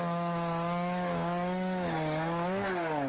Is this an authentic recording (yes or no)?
no